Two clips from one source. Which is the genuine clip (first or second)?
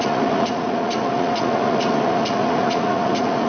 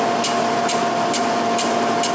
second